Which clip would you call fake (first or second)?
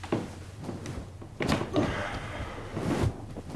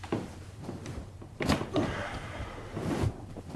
second